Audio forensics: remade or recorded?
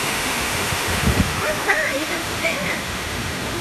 remade